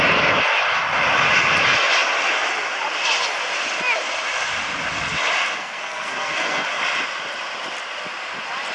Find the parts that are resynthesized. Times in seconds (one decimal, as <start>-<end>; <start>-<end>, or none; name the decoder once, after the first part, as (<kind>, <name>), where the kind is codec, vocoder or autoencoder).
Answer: 5.6-6.8 (codec, SNAC)